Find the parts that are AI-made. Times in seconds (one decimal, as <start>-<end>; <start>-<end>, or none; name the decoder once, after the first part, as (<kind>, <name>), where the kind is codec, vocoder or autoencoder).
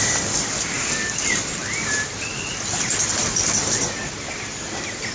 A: none